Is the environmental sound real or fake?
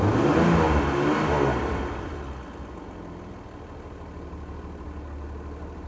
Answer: real